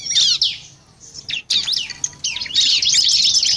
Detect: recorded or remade recorded